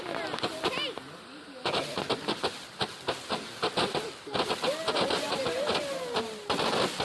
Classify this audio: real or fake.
real